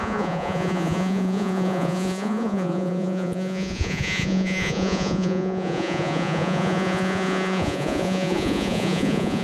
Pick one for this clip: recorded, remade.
remade